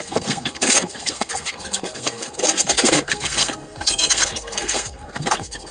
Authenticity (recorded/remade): remade